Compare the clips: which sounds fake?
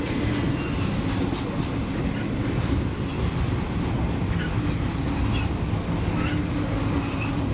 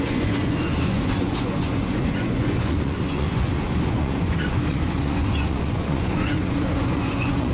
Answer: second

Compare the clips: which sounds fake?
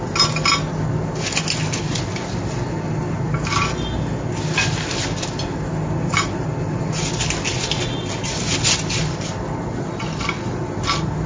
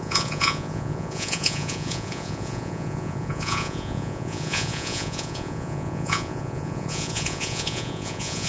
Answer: second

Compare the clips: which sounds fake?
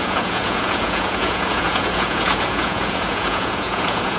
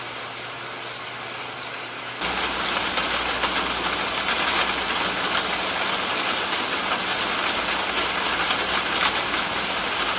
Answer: first